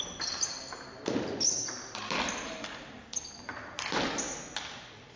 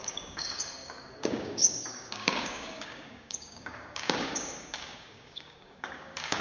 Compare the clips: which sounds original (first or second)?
first